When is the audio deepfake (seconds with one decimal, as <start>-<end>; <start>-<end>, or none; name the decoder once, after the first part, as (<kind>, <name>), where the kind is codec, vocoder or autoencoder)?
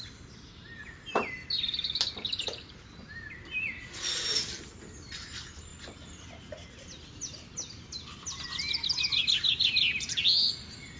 none